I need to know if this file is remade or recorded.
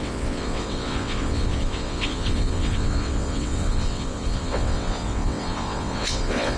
remade